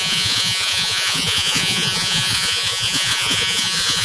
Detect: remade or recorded remade